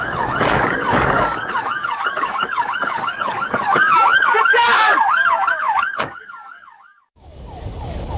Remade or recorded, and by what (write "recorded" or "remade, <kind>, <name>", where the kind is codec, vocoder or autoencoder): remade, codec, DAC